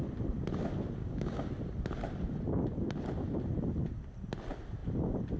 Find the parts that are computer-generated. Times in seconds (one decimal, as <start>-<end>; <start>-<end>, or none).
1.0-1.5